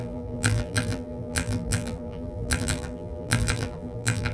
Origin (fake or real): fake